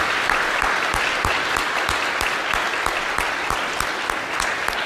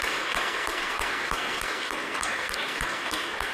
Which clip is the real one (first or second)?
first